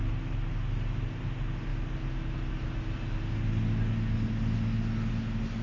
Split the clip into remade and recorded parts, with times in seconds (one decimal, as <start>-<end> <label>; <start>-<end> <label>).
0.0-5.6 recorded